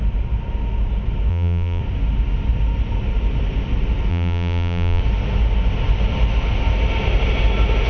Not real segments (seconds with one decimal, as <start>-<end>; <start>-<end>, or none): 1.3-1.8; 4.1-5.0